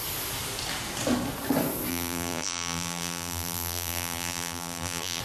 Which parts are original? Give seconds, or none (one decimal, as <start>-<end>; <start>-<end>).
0.0-1.9